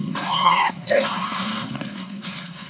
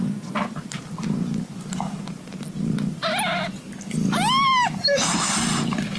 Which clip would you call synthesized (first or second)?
first